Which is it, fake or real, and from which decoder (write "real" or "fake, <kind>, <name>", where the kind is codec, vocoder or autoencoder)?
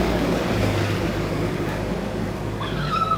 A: fake, codec, DAC